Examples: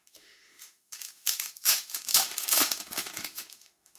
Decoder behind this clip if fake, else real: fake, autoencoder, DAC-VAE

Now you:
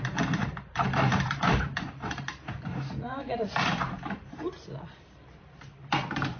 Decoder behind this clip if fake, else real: fake, vocoder, BigVGAN v2